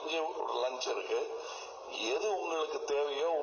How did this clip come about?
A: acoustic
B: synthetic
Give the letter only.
A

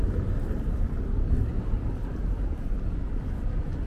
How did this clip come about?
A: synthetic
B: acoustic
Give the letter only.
B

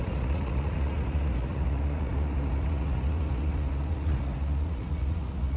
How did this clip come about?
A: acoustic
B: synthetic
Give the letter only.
B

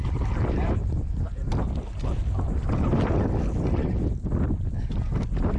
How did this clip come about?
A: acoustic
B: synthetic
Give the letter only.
A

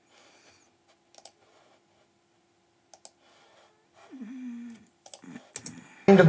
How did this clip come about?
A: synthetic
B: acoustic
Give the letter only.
B